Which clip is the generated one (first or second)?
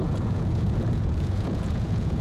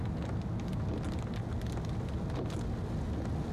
first